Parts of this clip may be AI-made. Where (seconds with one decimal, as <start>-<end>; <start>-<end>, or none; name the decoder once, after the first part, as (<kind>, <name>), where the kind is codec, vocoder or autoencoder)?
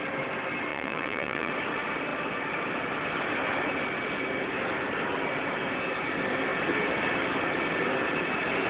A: 0.7-1.5 (vocoder, Vocos)